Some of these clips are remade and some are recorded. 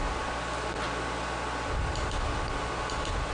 recorded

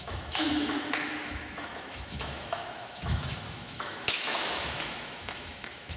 remade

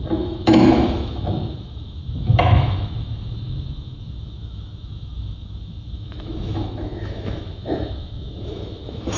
remade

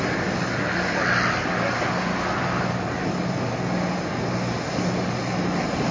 recorded